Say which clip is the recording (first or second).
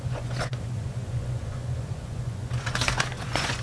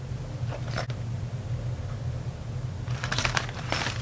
second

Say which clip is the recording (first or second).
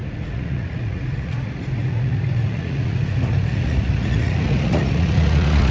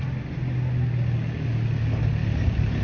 second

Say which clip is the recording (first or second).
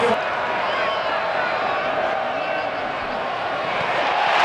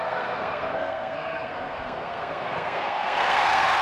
first